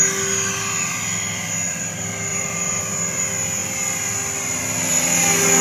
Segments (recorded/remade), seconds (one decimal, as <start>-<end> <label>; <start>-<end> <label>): 0.0-2.3 recorded; 2.3-2.8 remade; 2.8-5.6 recorded